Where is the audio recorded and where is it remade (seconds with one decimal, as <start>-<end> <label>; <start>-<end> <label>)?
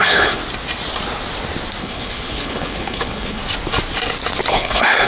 0.0-0.4 remade; 0.4-1.8 recorded; 1.8-3.4 remade; 3.4-4.5 recorded; 4.5-5.1 remade